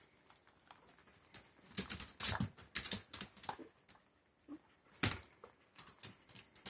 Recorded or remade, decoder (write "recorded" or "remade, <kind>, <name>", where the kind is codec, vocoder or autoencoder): recorded